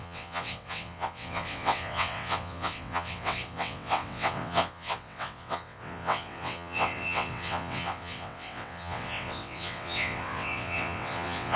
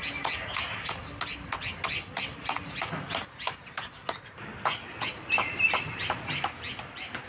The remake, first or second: first